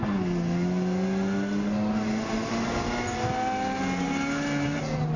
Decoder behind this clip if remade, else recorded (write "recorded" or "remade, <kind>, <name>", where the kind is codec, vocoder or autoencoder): recorded